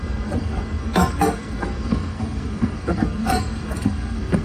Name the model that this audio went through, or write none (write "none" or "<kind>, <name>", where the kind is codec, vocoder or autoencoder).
codec, SNAC